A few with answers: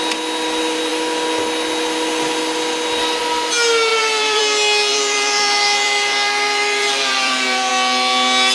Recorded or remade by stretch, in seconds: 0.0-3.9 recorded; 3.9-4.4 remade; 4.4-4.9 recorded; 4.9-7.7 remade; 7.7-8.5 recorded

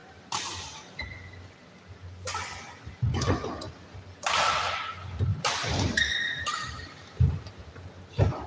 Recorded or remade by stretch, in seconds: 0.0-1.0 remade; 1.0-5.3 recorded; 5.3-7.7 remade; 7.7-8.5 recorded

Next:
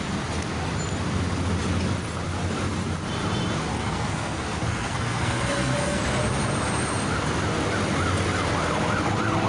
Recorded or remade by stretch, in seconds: 0.0-3.7 recorded; 3.7-6.0 remade; 6.0-9.5 recorded

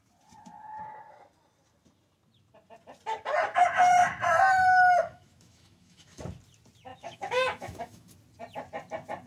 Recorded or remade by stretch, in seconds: 0.0-5.0 recorded; 5.0-6.2 remade; 6.2-6.9 recorded; 6.9-8.1 remade; 8.1-9.3 recorded

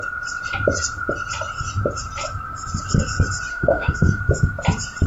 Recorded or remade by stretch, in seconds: 0.0-3.5 recorded; 3.5-4.2 remade; 4.2-5.1 recorded